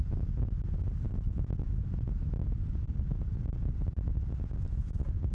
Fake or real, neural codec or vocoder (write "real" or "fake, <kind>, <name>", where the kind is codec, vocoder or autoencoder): real